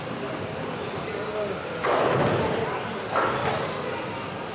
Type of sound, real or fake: real